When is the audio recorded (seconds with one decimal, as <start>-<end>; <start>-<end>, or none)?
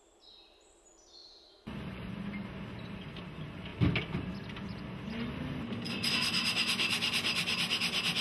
0.0-1.2; 2.1-8.2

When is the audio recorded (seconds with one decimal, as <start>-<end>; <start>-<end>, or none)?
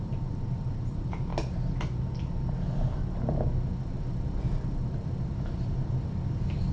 1.3-4.2